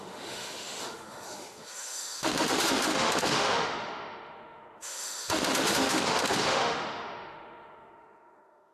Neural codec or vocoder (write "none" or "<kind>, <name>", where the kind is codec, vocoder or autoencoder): autoencoder, DAC-VAE